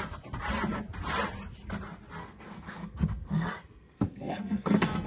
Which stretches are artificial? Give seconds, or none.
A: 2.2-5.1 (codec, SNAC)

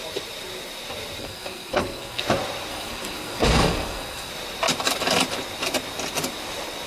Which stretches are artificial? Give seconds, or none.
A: 1.2-2.2 (codec, SNAC); 2.7-4.3

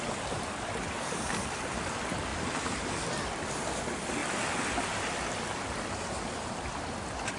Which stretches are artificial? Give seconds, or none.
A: none

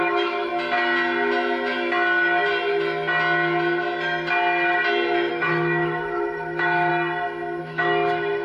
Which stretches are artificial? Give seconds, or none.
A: 0.0-0.5 (autoencoder, DAC-VAE); 5.3-6.9; 7.6-8.4

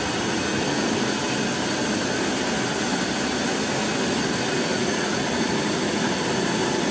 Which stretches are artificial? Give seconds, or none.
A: 4.7-5.2 (vocoder, Vocos)

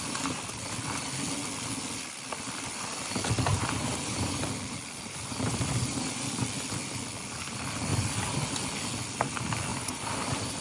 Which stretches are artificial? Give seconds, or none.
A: 3.5-6.4 (vocoder, BigVGAN v2); 7.9-8.5; 9.7-10.6

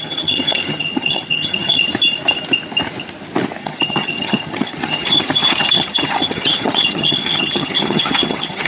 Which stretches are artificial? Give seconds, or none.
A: 0.0-1.9 (vocoder, HiFi-GAN); 3.6-8.7

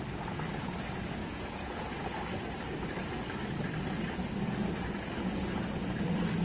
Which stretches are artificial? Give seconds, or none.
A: 1.2-1.8 (vocoder, Vocos)